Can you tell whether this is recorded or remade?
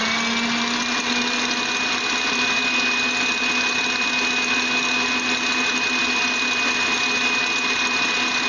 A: recorded